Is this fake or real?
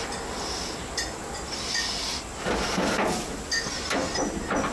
real